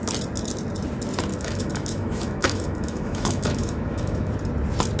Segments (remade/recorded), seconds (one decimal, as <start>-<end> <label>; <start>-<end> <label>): 0.0-1.3 recorded; 1.3-4.3 remade; 4.3-5.0 recorded